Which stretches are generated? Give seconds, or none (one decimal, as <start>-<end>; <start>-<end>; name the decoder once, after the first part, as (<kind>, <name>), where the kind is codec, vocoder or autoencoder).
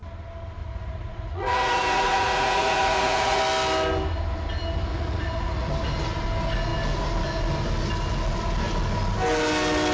0.6-3.4 (vocoder, Vocos); 4.9-5.7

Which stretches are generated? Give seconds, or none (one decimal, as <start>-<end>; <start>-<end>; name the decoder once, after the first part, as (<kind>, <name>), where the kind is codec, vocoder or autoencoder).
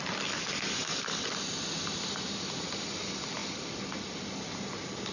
none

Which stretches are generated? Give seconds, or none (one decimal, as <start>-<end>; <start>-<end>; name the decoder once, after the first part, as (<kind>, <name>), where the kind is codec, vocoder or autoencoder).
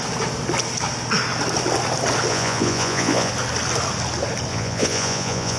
2.3-3.3 (vocoder, Vocos); 4.5-5.6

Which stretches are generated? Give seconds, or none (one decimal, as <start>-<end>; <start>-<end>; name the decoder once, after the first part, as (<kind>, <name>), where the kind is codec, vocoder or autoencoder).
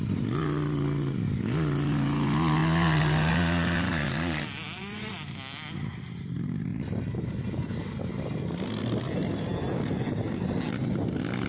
none